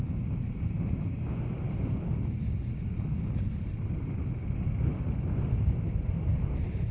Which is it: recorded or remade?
recorded